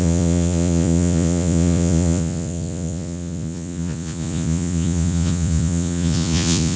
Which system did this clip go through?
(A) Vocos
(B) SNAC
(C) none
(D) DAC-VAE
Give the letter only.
A